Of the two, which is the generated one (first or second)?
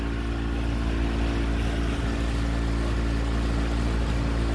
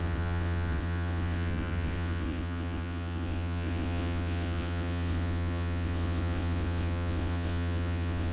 second